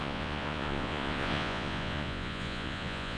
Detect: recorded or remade remade